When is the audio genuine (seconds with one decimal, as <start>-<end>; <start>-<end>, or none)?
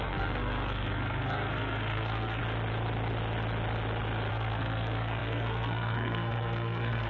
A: 2.4-4.3